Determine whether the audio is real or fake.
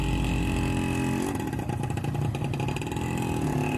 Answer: real